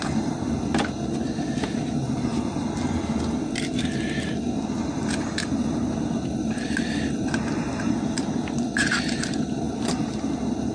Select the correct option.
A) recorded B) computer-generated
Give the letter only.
A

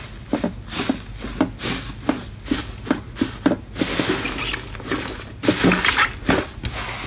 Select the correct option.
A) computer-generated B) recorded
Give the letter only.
B